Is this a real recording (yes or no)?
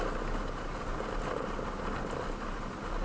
yes